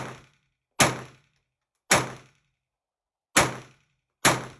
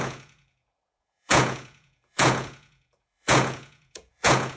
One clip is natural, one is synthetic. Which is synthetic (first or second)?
second